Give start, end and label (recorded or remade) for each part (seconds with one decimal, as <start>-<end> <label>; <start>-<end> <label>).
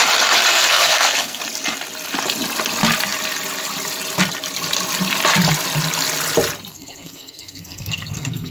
0.0-0.5 recorded; 0.5-1.4 remade; 1.4-6.7 recorded; 6.7-8.5 remade